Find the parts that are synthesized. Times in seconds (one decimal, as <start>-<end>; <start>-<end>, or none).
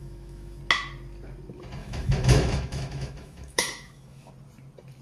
0.0-0.6; 1.8-4.3